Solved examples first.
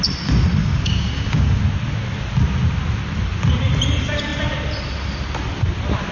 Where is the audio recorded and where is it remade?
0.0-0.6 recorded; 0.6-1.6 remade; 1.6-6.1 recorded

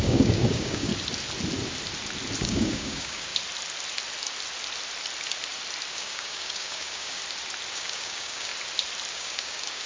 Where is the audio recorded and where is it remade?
0.0-0.9 remade; 0.9-2.4 recorded; 2.4-3.3 remade; 3.3-5.9 recorded; 5.9-7.2 remade; 7.2-7.7 recorded; 7.7-8.5 remade; 8.5-9.1 recorded; 9.1-9.9 remade

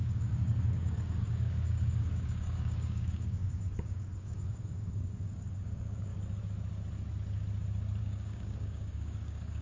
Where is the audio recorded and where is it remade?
0.0-6.1 remade; 6.1-8.0 recorded; 8.0-9.6 remade

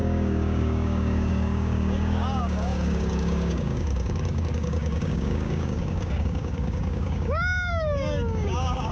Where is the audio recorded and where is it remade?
0.0-8.9 remade

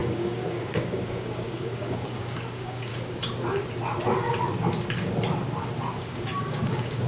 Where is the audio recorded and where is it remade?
0.0-2.9 remade; 2.9-6.0 recorded; 6.0-7.1 remade